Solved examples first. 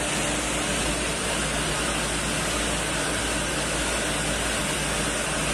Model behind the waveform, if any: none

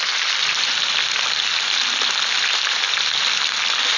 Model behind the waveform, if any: none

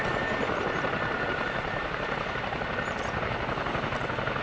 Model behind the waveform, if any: vocoder, BigVGAN v2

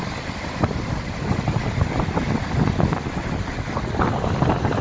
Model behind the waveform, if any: none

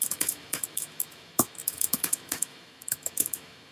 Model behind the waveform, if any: autoencoder, DAC-VAE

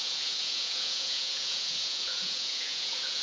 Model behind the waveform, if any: vocoder, Vocos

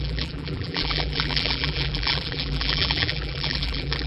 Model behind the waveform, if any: vocoder, BigVGAN v2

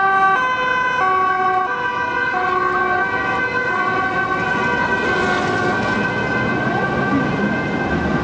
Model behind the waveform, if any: none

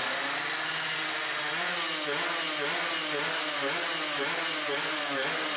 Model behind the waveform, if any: none